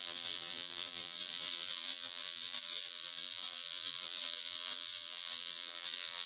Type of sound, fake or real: fake